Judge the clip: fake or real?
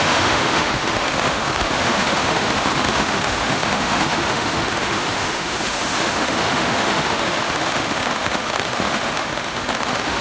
fake